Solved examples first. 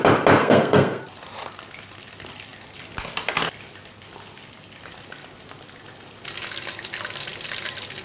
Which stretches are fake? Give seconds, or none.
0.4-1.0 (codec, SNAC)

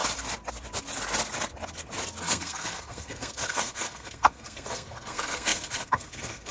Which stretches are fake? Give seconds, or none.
2.2-6.5 (codec, SNAC)